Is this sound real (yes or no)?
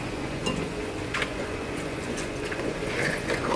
no